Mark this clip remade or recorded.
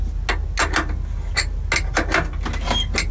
recorded